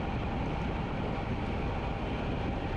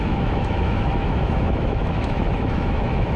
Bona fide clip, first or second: first